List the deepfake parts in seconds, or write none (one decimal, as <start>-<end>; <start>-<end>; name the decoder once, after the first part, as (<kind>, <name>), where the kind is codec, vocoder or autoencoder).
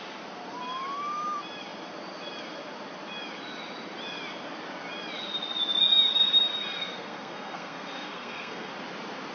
6.8-8.7 (codec, SNAC)